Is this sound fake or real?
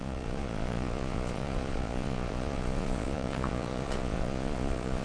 fake